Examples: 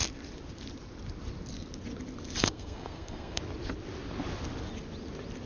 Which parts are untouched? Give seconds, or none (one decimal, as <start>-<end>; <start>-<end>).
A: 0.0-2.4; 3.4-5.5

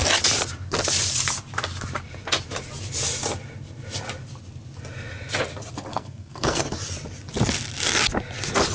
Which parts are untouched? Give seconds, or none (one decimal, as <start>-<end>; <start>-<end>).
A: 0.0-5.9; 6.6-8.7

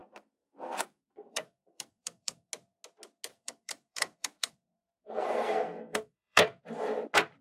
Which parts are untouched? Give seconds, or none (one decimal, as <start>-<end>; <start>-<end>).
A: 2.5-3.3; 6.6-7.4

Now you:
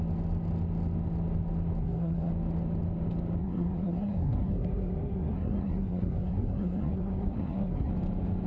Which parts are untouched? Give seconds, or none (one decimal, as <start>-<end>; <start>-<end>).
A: 0.0-1.8; 2.3-3.4; 7.9-8.5

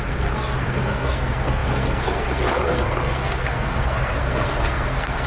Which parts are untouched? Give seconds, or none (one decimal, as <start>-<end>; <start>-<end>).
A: none

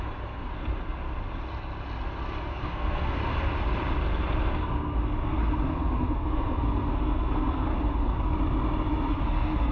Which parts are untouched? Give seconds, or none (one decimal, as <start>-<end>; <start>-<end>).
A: 0.5-2.4; 3.2-4.6; 8.3-9.1

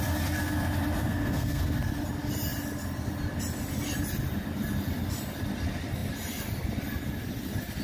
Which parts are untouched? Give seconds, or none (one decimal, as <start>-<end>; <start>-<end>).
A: 0.0-1.0; 1.6-7.8

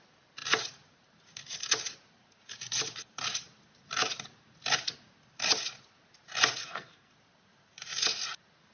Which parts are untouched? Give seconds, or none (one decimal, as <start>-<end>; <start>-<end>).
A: 0.0-6.6; 7.1-8.7